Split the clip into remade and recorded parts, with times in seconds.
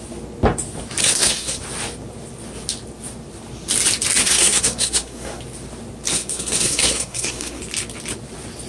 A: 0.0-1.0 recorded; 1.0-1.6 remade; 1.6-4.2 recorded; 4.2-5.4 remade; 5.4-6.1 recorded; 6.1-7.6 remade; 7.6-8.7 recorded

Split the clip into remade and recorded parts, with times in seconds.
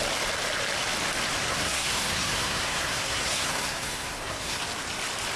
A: 0.0-1.4 recorded; 1.4-4.6 remade; 4.6-5.4 recorded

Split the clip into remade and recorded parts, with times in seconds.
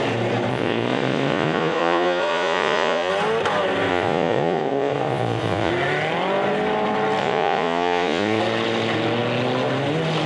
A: 0.0-0.5 recorded; 0.5-3.1 remade; 3.1-3.9 recorded; 3.9-5.7 remade; 5.7-7.2 recorded; 7.2-8.4 remade; 8.4-10.3 recorded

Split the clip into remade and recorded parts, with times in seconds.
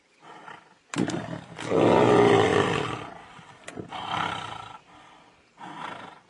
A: 0.0-0.4 recorded; 0.4-1.7 remade; 1.7-2.5 recorded; 2.5-4.5 remade; 4.5-6.3 recorded